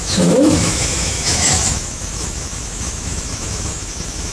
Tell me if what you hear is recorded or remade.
remade